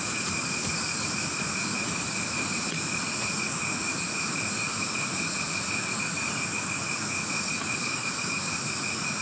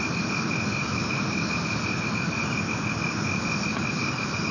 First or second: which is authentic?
second